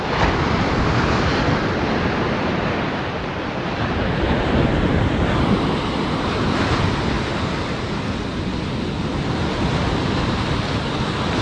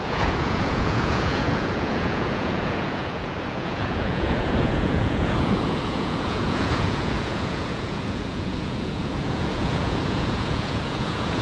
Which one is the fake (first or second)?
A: second